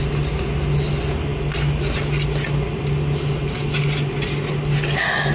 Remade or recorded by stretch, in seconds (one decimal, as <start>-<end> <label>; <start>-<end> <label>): 0.0-5.3 recorded